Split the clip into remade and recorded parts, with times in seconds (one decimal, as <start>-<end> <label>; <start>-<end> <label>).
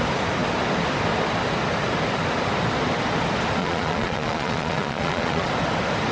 0.0-3.6 recorded; 3.6-5.5 remade; 5.5-6.1 recorded